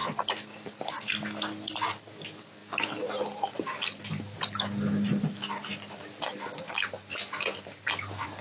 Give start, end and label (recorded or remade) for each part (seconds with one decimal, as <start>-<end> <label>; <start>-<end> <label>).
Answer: 0.0-8.4 recorded